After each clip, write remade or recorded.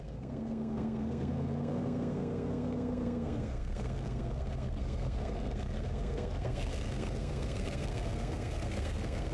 remade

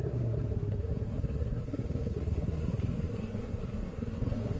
remade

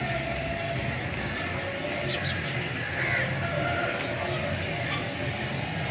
recorded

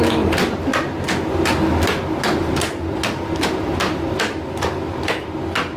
recorded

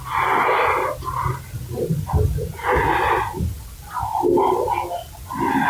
recorded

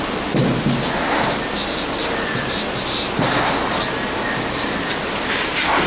recorded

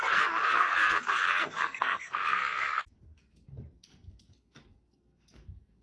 remade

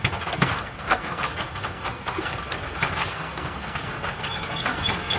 remade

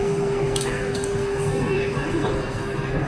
remade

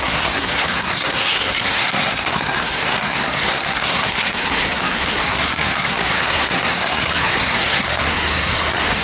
remade